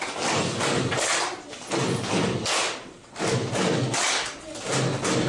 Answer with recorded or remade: recorded